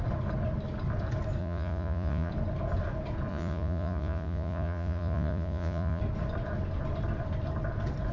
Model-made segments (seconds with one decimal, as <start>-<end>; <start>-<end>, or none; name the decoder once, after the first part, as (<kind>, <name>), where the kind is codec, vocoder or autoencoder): 1.4-2.3 (vocoder, Vocos); 3.3-6.0